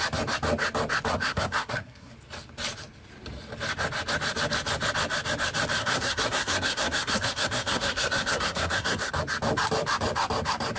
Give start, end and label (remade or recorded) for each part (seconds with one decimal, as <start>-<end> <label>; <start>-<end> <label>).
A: 0.0-1.1 recorded; 1.1-2.1 remade; 2.1-5.8 recorded; 5.8-9.1 remade; 9.1-10.8 recorded